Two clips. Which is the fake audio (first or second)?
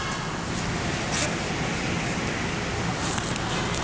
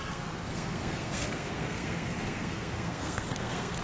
second